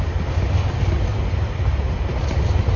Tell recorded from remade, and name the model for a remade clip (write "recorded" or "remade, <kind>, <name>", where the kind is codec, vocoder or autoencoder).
recorded